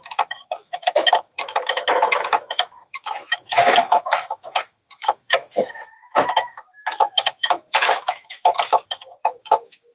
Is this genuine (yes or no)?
no